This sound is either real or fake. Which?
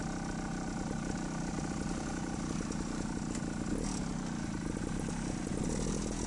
real